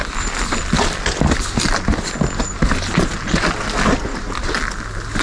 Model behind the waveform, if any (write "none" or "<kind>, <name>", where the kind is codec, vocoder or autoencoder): none